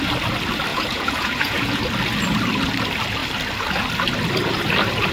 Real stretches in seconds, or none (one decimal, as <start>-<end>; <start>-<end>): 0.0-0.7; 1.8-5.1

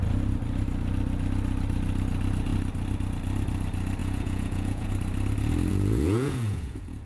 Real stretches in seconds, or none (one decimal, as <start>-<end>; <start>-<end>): 0.0-4.0; 4.9-5.7

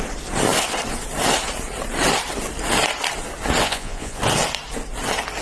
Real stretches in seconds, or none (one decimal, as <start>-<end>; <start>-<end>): 0.0-3.6; 4.2-5.4